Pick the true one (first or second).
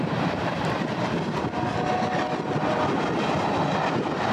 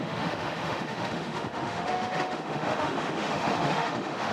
first